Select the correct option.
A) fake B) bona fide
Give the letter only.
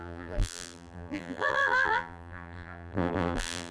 A